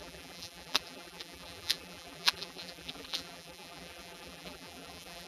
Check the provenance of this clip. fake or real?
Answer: fake